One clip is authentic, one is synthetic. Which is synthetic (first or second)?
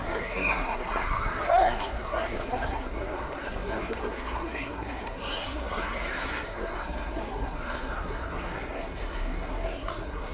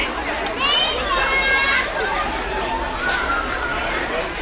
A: first